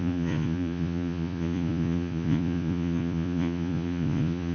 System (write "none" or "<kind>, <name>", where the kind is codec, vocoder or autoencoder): vocoder, Vocos